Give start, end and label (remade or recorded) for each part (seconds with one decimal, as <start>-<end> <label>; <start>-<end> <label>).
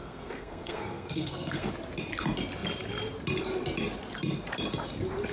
0.0-1.7 remade; 1.7-5.3 recorded